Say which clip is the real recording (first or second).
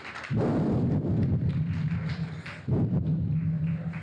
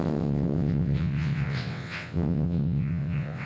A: first